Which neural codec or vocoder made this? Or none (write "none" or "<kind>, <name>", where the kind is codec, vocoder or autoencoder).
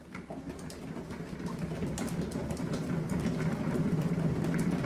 vocoder, BigVGAN v2